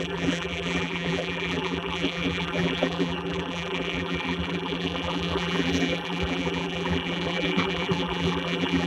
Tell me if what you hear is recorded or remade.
remade